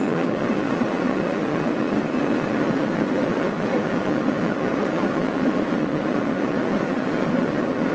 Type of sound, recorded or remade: remade